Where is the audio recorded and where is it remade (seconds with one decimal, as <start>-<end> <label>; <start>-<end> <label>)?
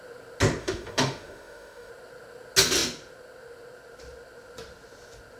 0.0-0.6 recorded; 0.6-1.9 remade; 1.9-5.4 recorded